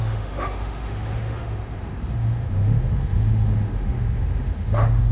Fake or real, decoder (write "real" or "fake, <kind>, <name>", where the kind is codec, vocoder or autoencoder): fake, autoencoder, DAC-VAE